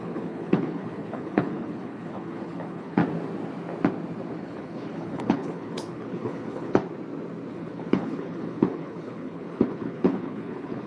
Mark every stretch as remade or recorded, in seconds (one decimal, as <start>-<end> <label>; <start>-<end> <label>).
0.0-3.0 remade; 3.0-4.4 recorded; 4.4-6.8 remade; 6.8-7.5 recorded; 7.5-10.9 remade